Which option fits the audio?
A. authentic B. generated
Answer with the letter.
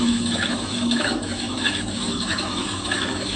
B